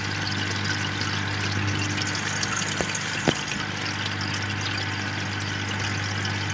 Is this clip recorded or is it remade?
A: recorded